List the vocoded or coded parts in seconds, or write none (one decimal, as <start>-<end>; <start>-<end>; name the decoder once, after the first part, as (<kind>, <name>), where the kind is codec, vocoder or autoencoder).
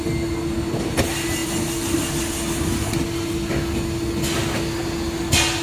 none